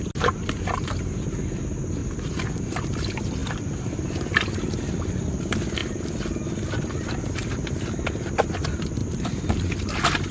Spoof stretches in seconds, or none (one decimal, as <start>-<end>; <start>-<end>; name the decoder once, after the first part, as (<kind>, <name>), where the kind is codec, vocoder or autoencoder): 2.0-2.6 (vocoder, BigVGAN v2); 3.4-5.1; 9.0-9.6